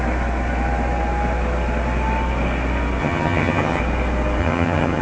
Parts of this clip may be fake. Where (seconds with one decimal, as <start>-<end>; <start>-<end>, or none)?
3.0-3.8; 4.4-5.0